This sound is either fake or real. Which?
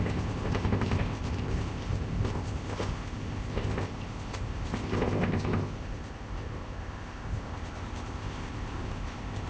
fake